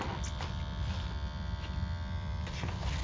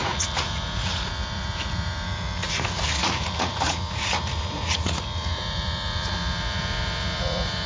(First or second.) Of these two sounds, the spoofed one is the second